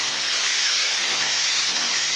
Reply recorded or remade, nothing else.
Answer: remade